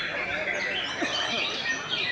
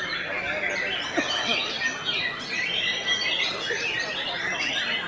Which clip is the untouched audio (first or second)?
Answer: second